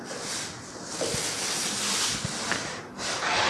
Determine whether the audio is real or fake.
real